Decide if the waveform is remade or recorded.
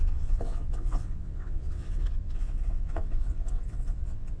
remade